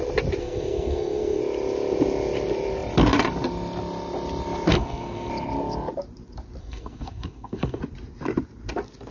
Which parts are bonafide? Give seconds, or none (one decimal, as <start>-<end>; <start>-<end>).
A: 0.0-0.4; 1.4-4.7; 5.3-6.6; 7.8-9.1